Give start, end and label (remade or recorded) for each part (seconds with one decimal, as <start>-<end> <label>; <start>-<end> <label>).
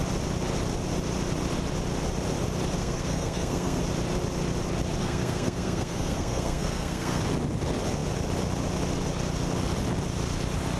0.0-2.8 recorded; 2.8-3.8 remade; 3.8-5.0 recorded; 5.0-7.2 remade; 7.2-10.8 recorded